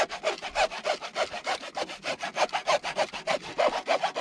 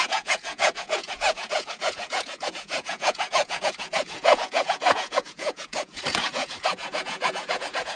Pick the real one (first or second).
first